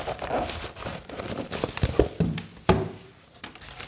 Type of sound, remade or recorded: recorded